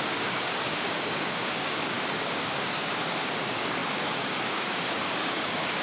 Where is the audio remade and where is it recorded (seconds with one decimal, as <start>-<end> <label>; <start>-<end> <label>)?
0.0-5.8 remade